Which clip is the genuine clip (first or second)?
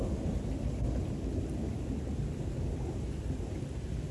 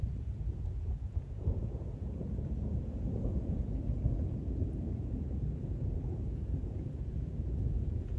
first